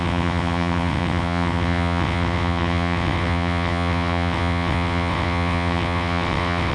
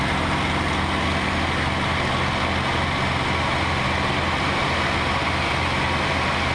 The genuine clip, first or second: second